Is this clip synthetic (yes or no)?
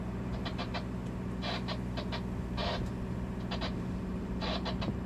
no